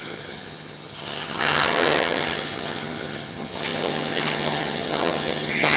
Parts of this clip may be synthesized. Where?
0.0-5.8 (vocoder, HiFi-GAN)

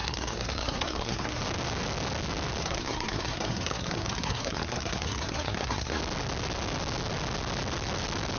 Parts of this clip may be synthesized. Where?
0.0-1.4 (codec, SNAC); 2.6-6.0